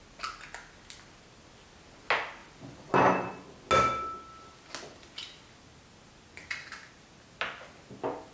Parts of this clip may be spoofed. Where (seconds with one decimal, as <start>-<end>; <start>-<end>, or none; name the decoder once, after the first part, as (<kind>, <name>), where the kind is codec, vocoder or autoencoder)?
2.4-3.3 (vocoder, BigVGAN v2)